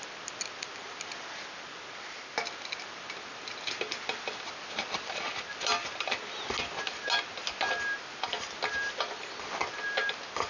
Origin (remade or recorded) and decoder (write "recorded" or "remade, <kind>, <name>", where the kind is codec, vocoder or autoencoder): recorded